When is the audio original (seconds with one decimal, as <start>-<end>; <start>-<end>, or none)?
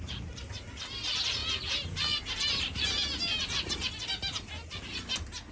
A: 0.0-5.5